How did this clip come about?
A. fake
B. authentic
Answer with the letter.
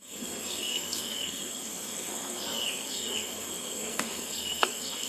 A